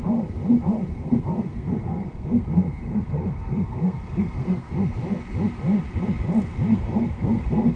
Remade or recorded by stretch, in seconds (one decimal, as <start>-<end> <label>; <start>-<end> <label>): 0.0-0.9 recorded; 0.9-4.7 remade; 4.7-6.7 recorded; 6.7-7.8 remade